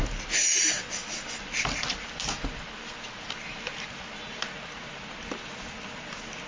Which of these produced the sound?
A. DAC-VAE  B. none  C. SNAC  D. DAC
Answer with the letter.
B